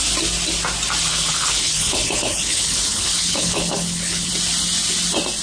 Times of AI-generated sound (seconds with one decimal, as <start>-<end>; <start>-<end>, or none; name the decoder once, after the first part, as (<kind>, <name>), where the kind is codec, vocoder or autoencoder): 1.1-4.3 (codec, HILCodec)